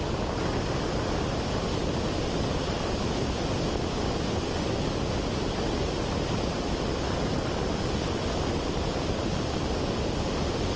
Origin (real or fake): real